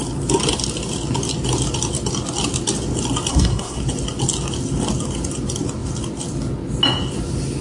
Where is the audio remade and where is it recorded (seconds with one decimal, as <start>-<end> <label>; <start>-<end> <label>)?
0.0-3.3 recorded; 3.3-3.8 remade; 3.8-7.6 recorded